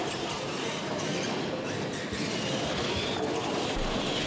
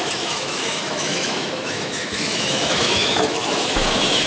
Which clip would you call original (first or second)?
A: first